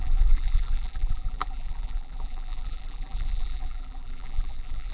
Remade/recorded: remade